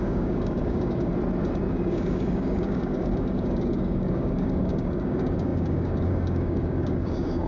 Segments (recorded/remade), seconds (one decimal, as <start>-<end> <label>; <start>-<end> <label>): 0.0-1.1 remade; 1.1-1.7 recorded; 1.7-7.5 remade